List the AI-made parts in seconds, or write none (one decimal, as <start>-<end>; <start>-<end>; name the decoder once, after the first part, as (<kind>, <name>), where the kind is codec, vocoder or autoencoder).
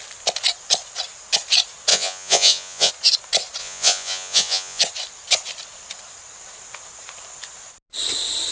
1.9-2.9 (vocoder, Vocos); 3.6-4.8